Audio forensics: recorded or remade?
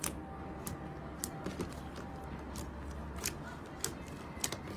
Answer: recorded